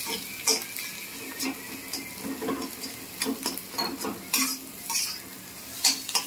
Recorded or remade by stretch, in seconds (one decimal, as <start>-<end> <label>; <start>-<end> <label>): 0.0-6.3 recorded